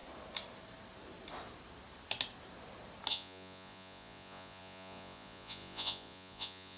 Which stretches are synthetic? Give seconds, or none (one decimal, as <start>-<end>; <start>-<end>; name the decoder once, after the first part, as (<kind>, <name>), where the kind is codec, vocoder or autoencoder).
3.1-6.8 (vocoder, Vocos)